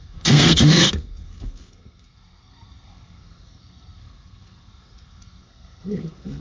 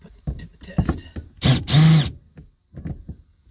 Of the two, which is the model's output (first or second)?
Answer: first